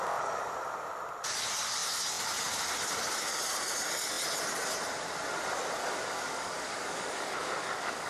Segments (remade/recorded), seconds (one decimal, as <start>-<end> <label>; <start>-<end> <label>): 0.0-5.8 recorded; 5.8-8.1 remade

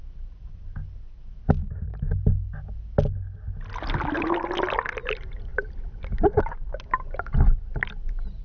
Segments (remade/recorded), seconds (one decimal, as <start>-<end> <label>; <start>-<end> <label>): 0.0-8.4 recorded